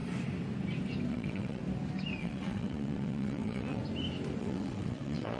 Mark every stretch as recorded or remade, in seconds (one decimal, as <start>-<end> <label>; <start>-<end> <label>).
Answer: 0.0-1.1 recorded; 1.1-1.6 remade; 1.6-2.2 recorded; 2.2-3.8 remade; 3.8-4.4 recorded; 4.4-5.4 remade